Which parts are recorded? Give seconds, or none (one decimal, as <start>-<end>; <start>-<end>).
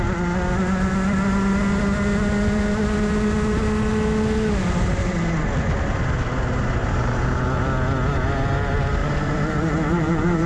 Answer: 0.0-6.8; 7.4-9.0